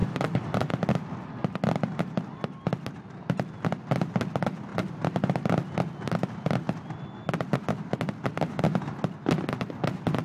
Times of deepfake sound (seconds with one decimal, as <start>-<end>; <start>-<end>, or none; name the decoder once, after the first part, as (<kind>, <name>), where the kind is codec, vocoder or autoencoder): 0.0-0.6 (vocoder, BigVGAN v2); 4.7-8.6